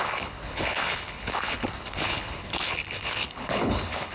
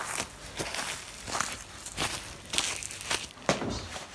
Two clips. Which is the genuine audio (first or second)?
second